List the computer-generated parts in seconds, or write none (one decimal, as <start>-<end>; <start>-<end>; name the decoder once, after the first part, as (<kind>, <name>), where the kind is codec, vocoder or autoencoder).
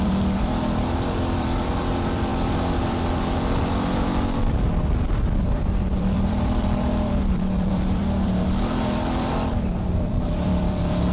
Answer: 0.0-11.1 (vocoder, BigVGAN v2)